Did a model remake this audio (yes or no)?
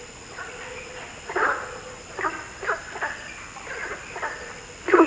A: no